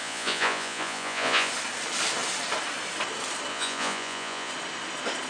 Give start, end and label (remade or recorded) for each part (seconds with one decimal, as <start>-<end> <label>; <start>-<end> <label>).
0.0-1.5 remade; 1.5-3.5 recorded; 3.5-4.5 remade; 4.5-5.3 recorded